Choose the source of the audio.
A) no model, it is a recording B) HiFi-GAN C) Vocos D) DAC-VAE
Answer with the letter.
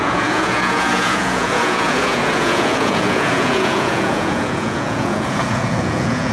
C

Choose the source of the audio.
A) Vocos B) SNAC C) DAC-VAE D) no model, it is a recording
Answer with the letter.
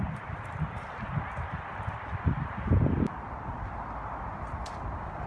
D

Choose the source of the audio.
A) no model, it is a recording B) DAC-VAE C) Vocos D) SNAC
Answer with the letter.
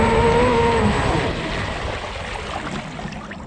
A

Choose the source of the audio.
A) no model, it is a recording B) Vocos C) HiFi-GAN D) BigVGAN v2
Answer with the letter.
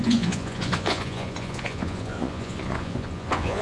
B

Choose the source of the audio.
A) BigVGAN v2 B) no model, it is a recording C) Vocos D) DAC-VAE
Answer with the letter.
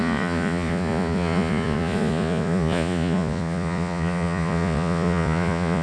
C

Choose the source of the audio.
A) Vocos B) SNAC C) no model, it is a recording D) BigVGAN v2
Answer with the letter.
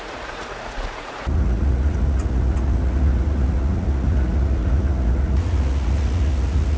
A